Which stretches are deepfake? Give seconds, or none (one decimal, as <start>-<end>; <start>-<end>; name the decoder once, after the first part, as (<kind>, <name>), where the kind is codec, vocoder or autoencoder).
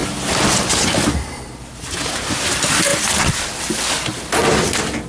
none